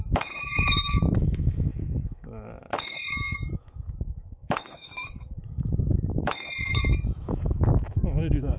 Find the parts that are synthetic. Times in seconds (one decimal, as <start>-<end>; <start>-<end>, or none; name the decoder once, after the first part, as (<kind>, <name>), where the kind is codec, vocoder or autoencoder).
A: 0.0-8.6 (autoencoder, DAC-VAE)